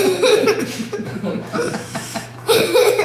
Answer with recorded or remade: remade